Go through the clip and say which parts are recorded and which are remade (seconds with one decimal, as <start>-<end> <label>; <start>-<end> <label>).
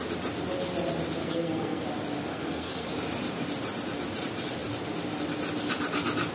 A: 0.0-1.2 recorded; 1.2-1.8 remade; 1.8-2.3 recorded; 2.3-2.9 remade; 2.9-6.3 recorded